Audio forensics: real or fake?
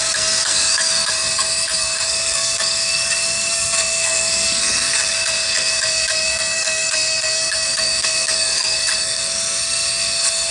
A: fake